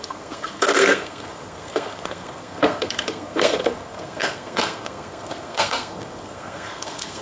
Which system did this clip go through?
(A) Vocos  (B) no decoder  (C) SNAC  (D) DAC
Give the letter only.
C